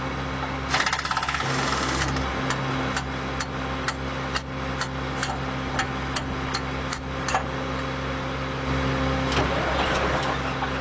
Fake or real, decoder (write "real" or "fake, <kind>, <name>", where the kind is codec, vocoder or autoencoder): real